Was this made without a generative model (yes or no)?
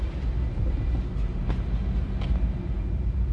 yes